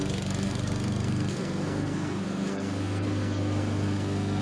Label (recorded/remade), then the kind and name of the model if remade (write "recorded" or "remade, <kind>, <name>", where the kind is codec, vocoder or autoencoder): remade, codec, SNAC